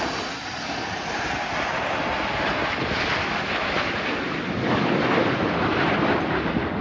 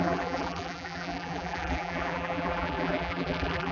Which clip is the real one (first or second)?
first